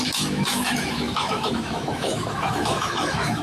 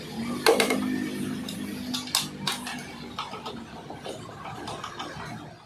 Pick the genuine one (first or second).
second